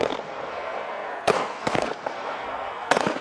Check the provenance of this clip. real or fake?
fake